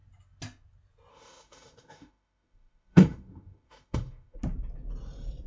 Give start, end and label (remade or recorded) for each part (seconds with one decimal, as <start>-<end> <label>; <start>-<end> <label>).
0.0-1.1 recorded; 1.1-4.4 remade; 4.4-5.5 recorded